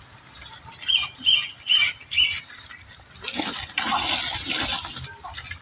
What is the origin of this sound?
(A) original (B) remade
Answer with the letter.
A